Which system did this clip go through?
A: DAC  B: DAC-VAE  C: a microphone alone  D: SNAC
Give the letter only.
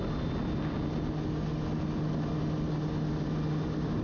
C